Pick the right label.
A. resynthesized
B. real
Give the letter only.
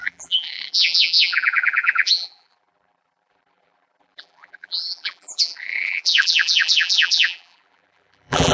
A